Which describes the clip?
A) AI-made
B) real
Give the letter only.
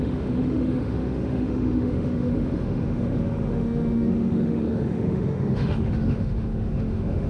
A